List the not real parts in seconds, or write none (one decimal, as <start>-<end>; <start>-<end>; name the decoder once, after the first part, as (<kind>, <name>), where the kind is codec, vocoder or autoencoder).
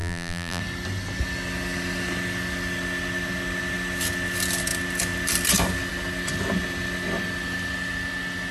0.0-0.6 (vocoder, BigVGAN v2)